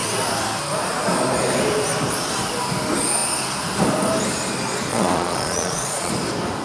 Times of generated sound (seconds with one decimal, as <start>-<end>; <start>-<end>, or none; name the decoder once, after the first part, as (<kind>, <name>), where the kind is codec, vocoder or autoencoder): 4.9-6.1 (vocoder, Vocos)